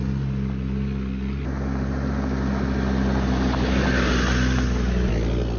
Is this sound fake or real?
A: real